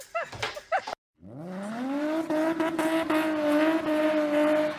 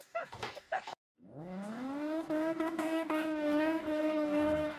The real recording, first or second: first